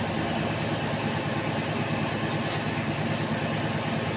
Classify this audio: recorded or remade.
recorded